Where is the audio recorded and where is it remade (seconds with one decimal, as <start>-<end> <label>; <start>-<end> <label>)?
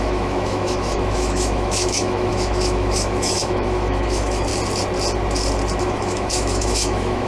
0.0-4.5 remade; 4.5-5.8 recorded; 5.8-7.3 remade